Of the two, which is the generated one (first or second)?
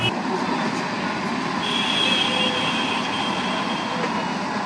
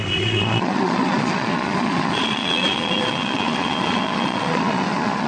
second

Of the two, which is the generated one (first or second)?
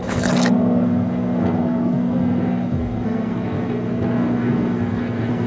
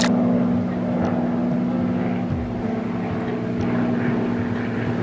first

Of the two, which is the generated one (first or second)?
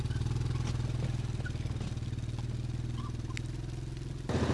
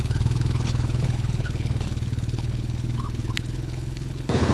second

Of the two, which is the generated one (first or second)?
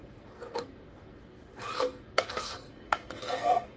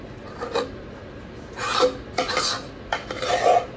first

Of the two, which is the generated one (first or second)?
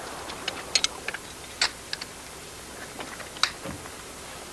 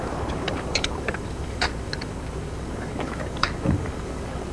second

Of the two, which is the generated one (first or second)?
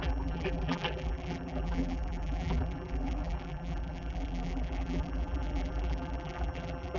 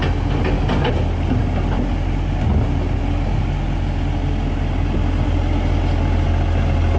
first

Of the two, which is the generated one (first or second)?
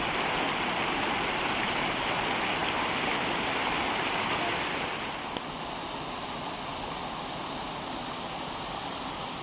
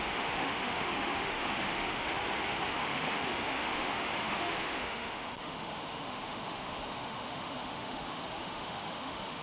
second